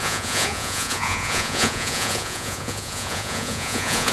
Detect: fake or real fake